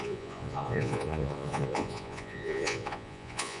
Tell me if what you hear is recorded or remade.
remade